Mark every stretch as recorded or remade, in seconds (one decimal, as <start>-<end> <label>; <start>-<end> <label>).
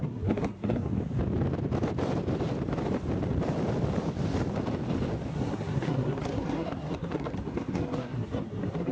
0.0-0.9 remade; 0.9-5.3 recorded; 5.3-8.9 remade